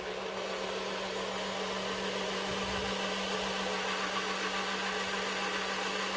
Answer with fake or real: real